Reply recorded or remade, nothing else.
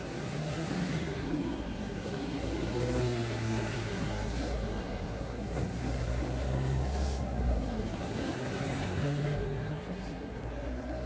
remade